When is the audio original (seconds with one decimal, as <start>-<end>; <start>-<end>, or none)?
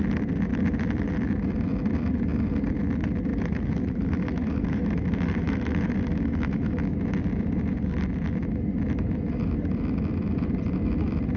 0.0-3.3; 6.9-11.4